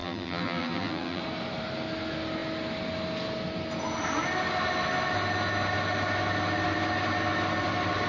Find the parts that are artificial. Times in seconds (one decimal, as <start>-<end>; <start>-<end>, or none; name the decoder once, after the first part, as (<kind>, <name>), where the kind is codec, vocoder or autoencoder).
0.0-1.2 (vocoder, BigVGAN v2)

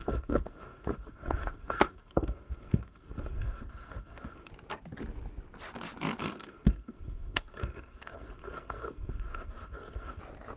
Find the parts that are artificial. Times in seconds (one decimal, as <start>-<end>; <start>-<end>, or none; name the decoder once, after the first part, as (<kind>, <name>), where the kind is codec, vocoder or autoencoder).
0.0-4.5 (codec, SNAC); 6.2-10.2

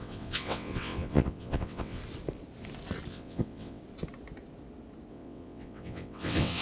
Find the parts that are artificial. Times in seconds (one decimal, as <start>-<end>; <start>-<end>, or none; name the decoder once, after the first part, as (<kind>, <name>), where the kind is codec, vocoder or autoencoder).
0.0-2.0 (vocoder, WaveNeXt); 3.1-3.8; 5.1-6.6

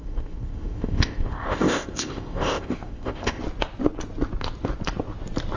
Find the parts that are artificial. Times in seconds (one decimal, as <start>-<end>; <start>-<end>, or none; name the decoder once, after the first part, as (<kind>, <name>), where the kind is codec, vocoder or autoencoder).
0.0-3.4 (codec, ZipCodec)

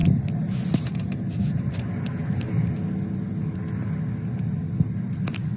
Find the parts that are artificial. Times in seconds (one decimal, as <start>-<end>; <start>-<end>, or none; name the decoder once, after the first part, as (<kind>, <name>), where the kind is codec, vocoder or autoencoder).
none

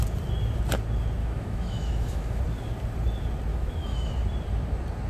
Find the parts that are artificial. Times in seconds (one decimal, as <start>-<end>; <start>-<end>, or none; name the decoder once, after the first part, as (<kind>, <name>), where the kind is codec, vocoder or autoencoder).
1.2-2.4 (autoencoder, DAC-VAE); 3.5-4.1

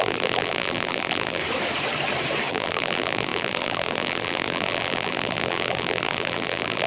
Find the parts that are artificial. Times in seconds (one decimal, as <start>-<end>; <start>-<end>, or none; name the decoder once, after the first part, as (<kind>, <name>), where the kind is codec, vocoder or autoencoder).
0.0-1.4 (vocoder, BigVGAN v2); 2.5-6.9